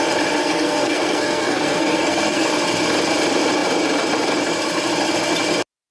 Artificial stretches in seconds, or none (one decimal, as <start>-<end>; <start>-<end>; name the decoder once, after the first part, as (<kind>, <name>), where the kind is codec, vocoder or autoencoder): 0.4-2.5 (codec, SNAC)